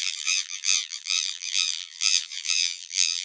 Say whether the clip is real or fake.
fake